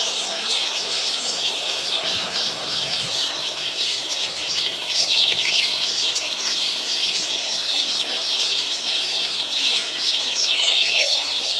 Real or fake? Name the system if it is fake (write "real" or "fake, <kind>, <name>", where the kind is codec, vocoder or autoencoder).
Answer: fake, codec, SNAC